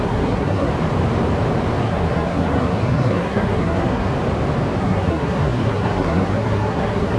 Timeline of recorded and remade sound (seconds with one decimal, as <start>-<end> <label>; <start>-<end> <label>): 0.0-0.7 remade; 0.7-1.8 recorded; 1.8-4.1 remade; 4.1-4.8 recorded; 4.8-7.2 remade